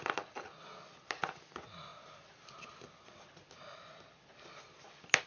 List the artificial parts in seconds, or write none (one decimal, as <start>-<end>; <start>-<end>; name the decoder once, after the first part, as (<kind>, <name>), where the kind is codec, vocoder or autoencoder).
none